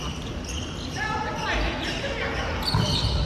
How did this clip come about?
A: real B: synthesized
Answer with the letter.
A